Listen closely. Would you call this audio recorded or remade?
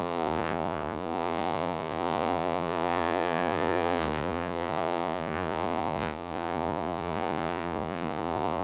remade